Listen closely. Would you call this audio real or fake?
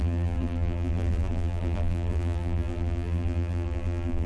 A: fake